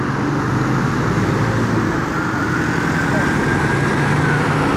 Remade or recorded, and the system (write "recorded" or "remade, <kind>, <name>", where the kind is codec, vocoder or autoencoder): recorded